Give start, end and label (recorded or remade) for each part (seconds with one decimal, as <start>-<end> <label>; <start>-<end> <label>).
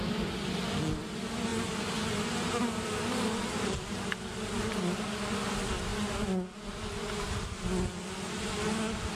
0.0-9.1 recorded